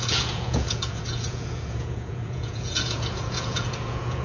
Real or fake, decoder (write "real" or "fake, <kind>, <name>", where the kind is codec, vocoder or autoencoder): fake, vocoder, Vocos